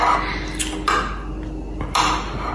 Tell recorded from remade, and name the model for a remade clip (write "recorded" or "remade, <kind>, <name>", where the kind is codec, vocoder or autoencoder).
recorded